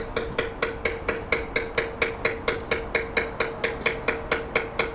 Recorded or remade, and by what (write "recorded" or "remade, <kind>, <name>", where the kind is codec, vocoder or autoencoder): recorded